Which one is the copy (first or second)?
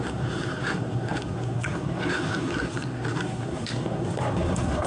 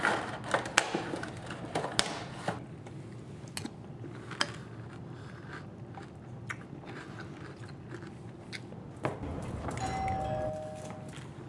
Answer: first